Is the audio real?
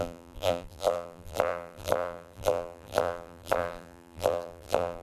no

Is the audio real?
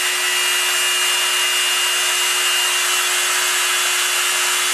yes